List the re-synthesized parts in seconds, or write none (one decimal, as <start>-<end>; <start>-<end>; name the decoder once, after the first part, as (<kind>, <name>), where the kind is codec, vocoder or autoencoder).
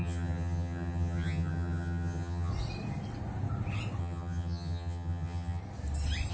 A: 0.0-2.5 (vocoder, HiFi-GAN); 4.0-5.6